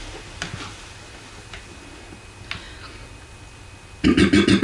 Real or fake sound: real